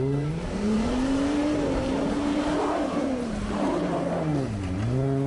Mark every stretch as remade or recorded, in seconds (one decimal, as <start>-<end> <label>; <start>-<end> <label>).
0.0-4.3 remade; 4.3-5.3 recorded